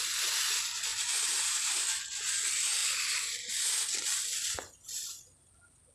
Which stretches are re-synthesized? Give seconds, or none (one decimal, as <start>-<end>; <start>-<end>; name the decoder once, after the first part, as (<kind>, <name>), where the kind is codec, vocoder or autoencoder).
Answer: 0.9-2.0 (vocoder, BigVGAN v2)